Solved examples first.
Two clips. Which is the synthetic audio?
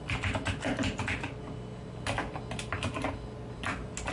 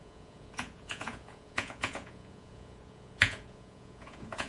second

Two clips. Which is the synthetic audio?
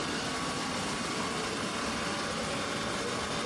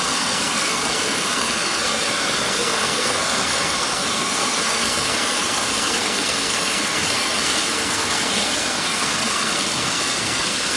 second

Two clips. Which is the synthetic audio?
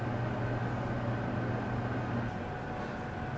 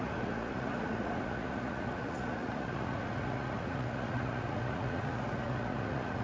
second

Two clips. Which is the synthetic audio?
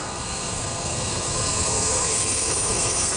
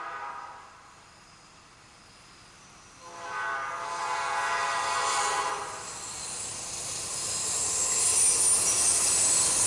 first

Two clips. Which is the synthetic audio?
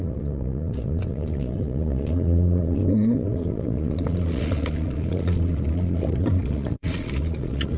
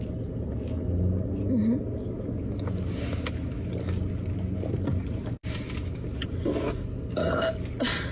first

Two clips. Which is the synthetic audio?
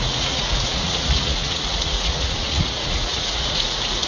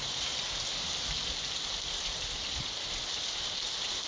first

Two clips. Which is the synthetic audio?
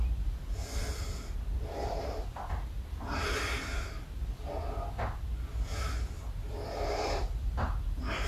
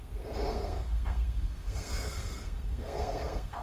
second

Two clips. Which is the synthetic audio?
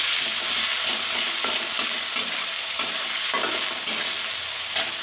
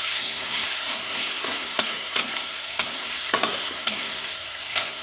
second